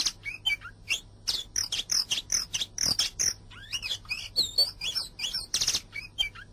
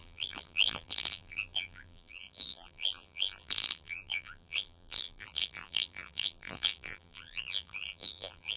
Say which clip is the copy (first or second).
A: second